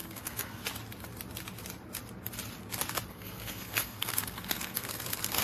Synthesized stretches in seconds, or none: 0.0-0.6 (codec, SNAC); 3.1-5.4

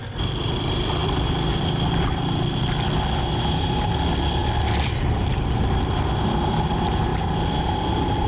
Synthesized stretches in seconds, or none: none

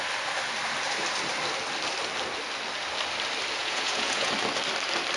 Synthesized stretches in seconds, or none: 3.6-4.3 (vocoder, Vocos)

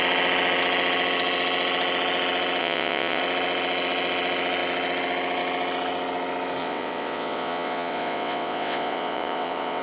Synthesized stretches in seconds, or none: 2.6-3.2 (vocoder, WaveNeXt); 6.6-9.8

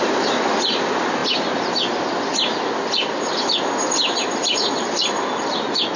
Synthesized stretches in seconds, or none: none

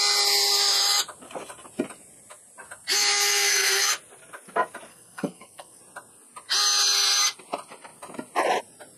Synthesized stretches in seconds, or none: 3.1-3.9 (codec, SNAC); 4.9-5.8

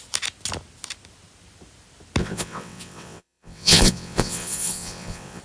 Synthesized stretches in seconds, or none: 2.2-5.4 (vocoder, WaveNeXt)